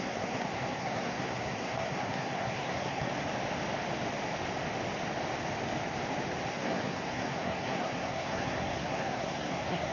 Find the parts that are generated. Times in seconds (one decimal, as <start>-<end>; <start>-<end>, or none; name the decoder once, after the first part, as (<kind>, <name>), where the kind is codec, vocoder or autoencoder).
0.0-3.1 (codec, SNAC); 6.5-9.9